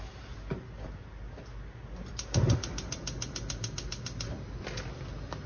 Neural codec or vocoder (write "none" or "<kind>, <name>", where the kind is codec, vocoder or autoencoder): none